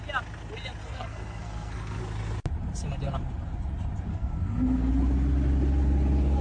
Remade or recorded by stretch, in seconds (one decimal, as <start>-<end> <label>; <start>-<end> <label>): 0.0-0.8 recorded; 0.8-2.0 remade; 2.0-4.1 recorded; 4.1-4.9 remade; 4.9-6.4 recorded